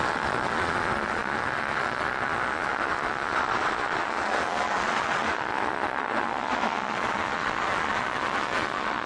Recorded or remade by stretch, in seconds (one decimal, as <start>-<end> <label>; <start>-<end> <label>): 0.0-9.1 remade